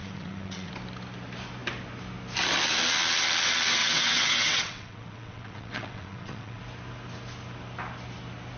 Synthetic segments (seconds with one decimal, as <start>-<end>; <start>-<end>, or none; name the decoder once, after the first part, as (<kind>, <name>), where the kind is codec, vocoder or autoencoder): 0.0-0.7 (vocoder, WaveNeXt); 3.8-6.6